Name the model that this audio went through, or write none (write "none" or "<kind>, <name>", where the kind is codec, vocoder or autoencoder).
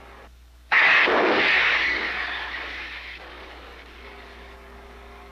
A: codec, DAC